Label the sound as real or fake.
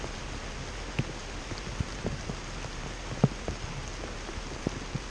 real